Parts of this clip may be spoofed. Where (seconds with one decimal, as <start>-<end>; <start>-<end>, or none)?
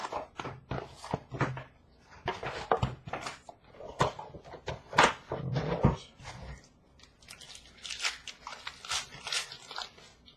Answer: 0.0-0.6; 3.3-6.2